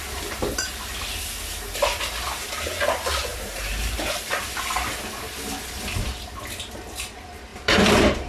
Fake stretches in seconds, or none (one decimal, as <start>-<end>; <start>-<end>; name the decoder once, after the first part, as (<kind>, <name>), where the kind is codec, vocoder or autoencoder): 3.3-4.4 (vocoder, BigVGAN v2); 7.5-8.3